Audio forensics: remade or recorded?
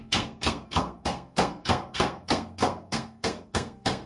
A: remade